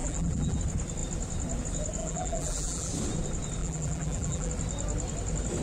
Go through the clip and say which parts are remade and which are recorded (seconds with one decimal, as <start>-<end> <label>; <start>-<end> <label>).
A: 0.0-0.6 remade; 0.6-2.0 recorded; 2.0-2.9 remade; 2.9-3.6 recorded; 3.6-4.5 remade; 4.5-5.6 recorded